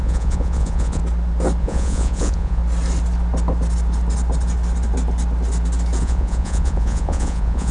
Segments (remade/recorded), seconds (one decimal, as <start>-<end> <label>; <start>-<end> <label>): 0.0-1.0 remade; 1.0-1.6 recorded; 1.6-2.6 remade; 2.6-6.0 recorded; 6.0-7.7 remade